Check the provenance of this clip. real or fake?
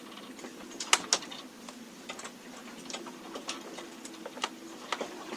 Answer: real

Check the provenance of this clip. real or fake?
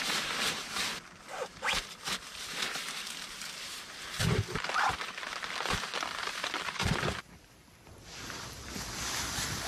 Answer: fake